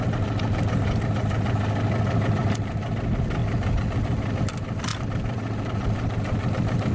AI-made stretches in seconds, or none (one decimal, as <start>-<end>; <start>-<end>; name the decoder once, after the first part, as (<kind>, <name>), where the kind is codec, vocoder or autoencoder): none